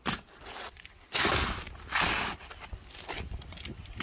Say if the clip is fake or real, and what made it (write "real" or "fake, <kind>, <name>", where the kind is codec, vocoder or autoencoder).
real